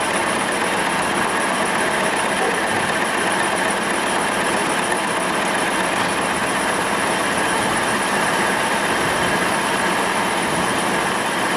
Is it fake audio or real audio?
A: real